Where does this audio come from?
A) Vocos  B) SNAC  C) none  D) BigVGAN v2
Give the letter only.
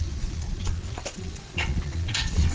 A